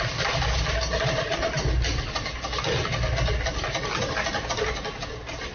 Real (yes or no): yes